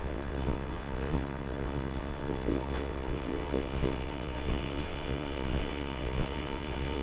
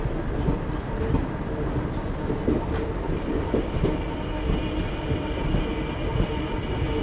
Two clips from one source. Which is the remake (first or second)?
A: first